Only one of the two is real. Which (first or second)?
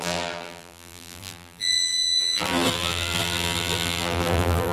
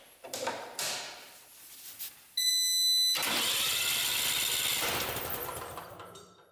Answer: second